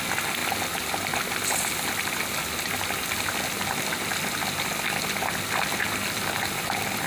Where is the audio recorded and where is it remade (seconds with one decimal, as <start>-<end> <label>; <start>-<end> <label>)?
0.0-7.1 recorded